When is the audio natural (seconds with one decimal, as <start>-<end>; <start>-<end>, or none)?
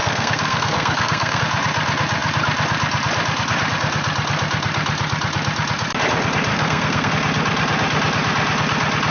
1.4-6.5; 7.1-9.1